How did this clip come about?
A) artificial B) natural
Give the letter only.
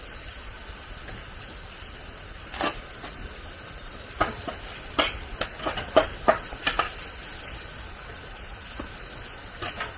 B